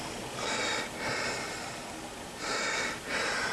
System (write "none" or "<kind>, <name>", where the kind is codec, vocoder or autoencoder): none